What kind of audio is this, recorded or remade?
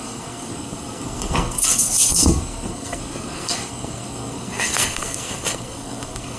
remade